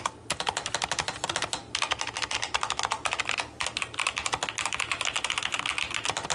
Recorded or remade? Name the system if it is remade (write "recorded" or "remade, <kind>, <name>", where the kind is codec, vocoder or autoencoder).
recorded